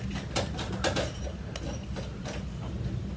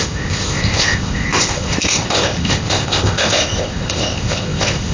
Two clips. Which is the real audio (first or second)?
first